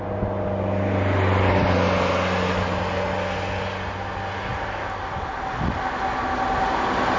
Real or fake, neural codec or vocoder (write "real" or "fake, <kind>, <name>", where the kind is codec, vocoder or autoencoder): real